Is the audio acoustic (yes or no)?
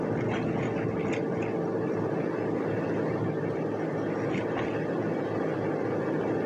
yes